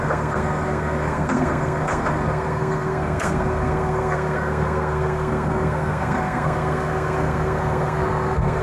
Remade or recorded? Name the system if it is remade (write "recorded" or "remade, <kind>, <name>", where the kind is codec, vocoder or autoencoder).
remade, codec, SNAC